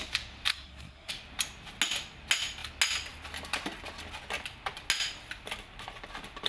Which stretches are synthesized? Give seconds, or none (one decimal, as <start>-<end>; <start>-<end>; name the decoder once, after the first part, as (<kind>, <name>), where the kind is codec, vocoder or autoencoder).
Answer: 0.5-1.1 (codec, SNAC)